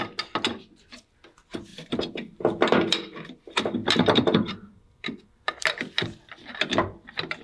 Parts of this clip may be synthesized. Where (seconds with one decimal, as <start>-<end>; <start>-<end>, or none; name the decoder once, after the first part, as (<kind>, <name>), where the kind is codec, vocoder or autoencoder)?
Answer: 1.7-3.4 (vocoder, BigVGAN v2); 3.8-7.4